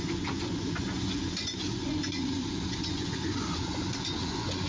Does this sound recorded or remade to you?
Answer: remade